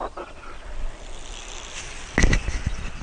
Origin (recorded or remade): recorded